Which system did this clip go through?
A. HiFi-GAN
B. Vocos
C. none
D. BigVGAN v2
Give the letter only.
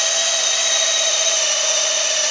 C